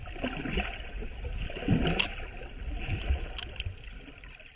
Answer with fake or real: real